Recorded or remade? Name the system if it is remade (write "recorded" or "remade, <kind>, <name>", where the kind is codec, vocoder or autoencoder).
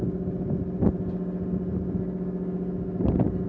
recorded